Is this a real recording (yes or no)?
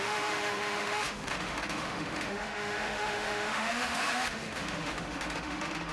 no